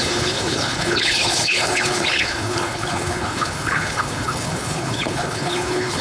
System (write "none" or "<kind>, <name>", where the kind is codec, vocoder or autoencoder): codec, HILCodec